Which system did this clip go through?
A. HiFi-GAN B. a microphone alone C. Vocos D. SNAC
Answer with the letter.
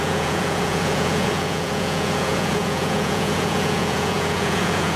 C